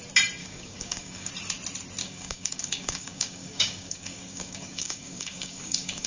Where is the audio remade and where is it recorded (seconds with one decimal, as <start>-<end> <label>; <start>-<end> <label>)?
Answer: 0.0-0.4 recorded; 0.4-1.3 remade; 1.3-2.0 recorded; 2.0-6.1 remade

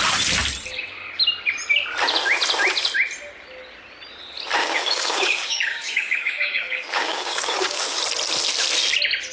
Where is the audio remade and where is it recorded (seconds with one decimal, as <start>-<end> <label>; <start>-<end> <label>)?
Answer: 0.0-4.6 recorded; 4.6-8.0 remade; 8.0-9.3 recorded

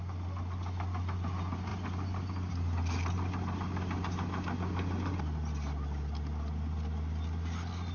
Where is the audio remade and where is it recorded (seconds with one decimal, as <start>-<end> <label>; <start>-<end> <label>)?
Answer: 0.0-7.9 recorded